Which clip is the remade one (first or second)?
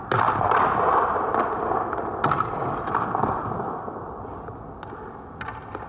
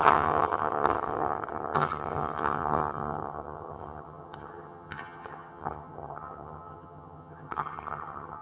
second